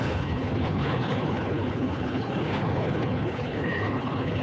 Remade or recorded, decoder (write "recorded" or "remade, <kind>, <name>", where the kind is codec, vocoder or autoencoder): remade, codec, HILCodec